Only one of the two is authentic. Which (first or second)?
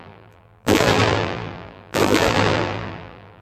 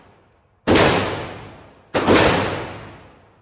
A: second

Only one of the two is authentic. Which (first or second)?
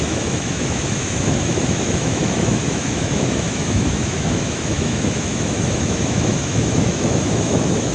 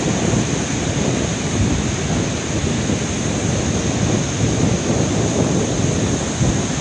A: second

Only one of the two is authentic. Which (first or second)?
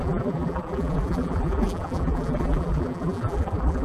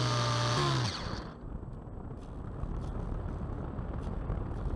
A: second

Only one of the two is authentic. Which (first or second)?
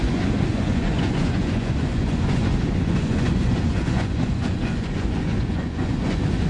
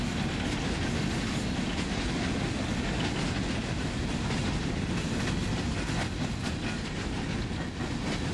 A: second